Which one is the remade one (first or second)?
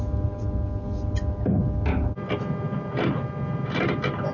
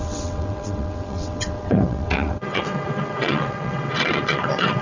second